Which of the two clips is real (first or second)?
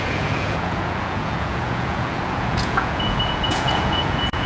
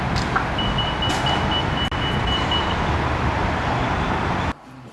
second